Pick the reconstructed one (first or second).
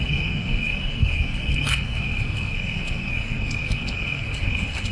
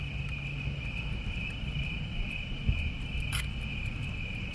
first